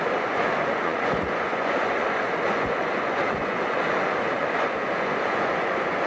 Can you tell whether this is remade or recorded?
remade